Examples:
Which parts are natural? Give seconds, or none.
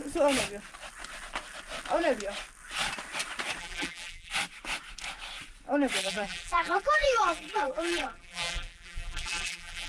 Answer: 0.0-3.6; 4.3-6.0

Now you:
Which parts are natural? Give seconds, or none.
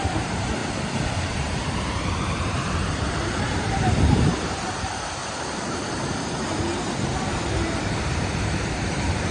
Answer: 0.6-1.2; 5.2-8.0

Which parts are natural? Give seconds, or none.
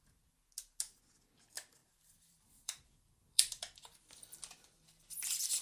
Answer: 0.0-1.8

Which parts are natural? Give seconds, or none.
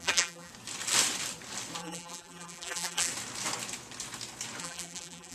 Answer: 0.5-1.8; 3.1-4.6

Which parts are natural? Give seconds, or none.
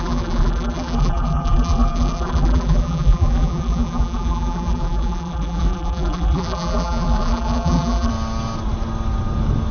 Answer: 8.1-9.7